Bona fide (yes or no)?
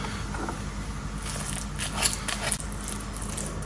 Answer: yes